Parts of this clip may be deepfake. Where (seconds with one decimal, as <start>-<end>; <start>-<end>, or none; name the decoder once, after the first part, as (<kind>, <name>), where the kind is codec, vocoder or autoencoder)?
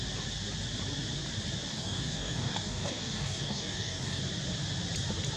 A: 1.7-4.2 (codec, DAC)